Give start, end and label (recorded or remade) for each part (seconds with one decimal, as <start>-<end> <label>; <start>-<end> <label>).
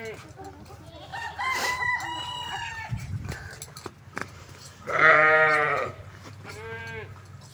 0.0-1.1 recorded; 1.1-1.7 remade; 1.7-2.9 recorded; 2.9-3.5 remade; 3.5-4.2 recorded; 4.2-6.8 remade; 6.8-7.5 recorded